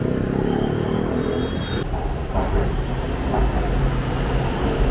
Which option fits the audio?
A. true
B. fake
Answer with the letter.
A